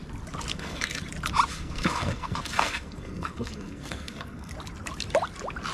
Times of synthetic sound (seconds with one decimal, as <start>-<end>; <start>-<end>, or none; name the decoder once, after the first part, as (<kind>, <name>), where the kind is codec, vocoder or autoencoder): 0.5-1.0 (codec, SNAC); 1.5-4.5

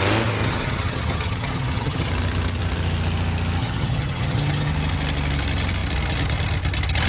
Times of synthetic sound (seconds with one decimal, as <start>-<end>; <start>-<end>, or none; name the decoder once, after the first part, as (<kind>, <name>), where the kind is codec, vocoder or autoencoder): 0.4-2.1 (vocoder, HiFi-GAN); 3.6-4.7

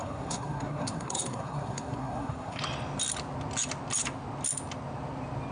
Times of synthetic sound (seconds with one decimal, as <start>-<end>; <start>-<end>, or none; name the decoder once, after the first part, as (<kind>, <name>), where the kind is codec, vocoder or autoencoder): 0.0-2.6 (codec, SNAC)

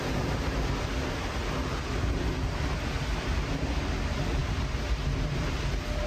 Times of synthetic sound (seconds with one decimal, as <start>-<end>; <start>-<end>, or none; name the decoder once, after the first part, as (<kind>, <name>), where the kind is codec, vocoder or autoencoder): none

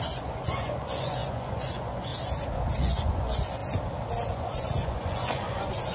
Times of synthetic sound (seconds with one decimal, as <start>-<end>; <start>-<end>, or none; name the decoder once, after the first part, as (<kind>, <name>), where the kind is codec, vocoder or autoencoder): 0.0-2.1 (vocoder, Vocos); 2.8-3.6; 4.3-5.9